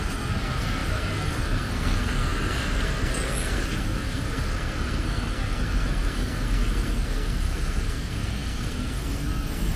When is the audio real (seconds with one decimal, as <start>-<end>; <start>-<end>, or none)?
none

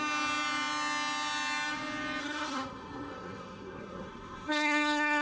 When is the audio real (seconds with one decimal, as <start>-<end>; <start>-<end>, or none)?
0.0-2.2